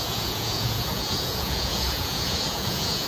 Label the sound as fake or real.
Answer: fake